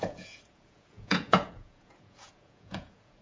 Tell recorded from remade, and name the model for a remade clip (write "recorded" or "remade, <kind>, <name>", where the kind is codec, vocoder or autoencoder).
remade, vocoder, Vocos